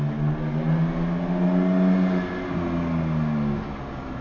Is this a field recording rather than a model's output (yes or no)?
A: yes